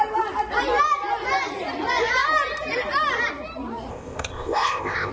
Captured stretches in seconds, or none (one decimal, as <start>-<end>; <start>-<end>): 0.0-3.9